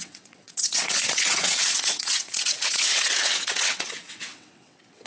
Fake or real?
fake